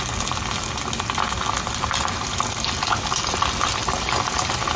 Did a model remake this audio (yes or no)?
no